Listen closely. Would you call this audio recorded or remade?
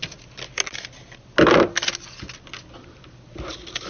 recorded